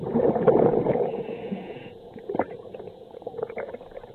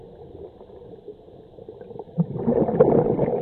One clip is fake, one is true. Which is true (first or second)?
second